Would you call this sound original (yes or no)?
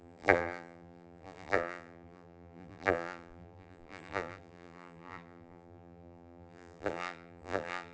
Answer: no